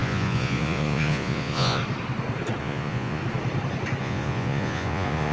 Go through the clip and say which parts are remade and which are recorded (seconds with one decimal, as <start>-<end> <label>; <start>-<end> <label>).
0.0-1.8 remade; 1.8-2.6 recorded; 2.6-3.2 remade; 3.2-4.0 recorded; 4.0-5.3 remade